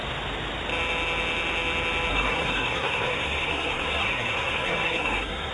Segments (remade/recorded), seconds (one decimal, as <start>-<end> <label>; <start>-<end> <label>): 0.0-2.1 recorded; 2.1-5.5 remade